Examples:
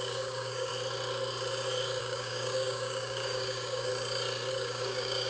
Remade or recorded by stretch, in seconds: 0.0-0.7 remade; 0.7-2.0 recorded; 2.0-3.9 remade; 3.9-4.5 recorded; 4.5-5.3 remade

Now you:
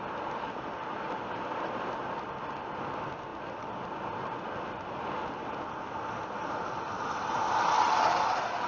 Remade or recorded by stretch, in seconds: 0.0-8.7 recorded

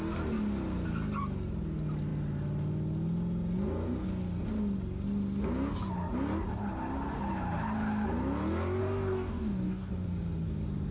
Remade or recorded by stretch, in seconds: 0.0-8.8 recorded; 8.8-9.9 remade; 9.9-10.9 recorded